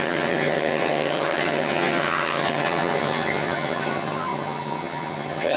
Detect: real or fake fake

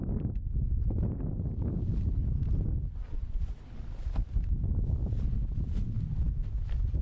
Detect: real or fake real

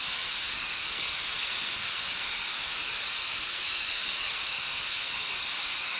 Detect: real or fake fake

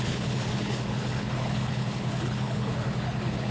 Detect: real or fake fake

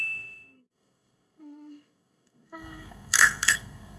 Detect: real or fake fake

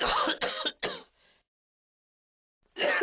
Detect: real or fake real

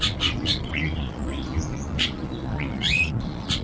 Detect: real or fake fake